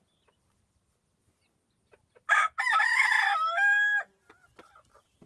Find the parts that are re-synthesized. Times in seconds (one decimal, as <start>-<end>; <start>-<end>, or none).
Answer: 2.8-4.0